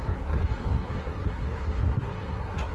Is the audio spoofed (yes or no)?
yes